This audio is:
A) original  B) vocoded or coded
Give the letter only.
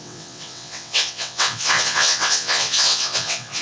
B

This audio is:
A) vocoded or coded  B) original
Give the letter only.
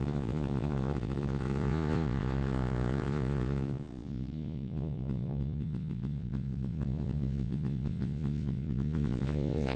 A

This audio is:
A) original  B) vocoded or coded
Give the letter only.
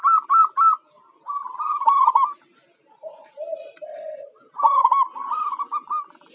A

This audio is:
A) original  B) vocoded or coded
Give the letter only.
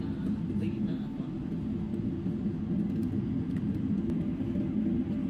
A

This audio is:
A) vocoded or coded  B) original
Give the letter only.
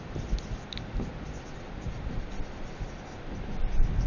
B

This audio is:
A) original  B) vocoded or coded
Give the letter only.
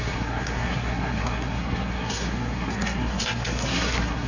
B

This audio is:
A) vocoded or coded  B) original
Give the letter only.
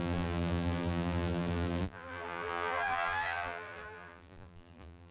A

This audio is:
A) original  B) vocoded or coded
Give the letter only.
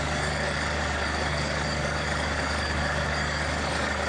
B